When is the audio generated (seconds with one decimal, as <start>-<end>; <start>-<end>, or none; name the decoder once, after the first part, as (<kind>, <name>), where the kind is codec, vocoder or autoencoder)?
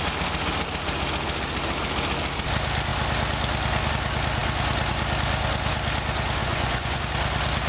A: 6.4-7.0 (vocoder, Vocos)